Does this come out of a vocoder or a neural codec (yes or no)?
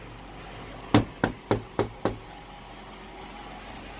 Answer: no